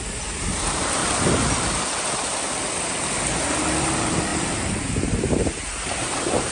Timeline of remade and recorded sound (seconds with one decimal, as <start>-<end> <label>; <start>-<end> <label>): 0.0-1.0 remade; 1.0-3.8 recorded; 3.8-6.5 remade